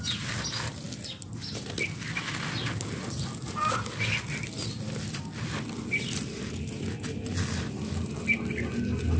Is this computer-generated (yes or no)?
no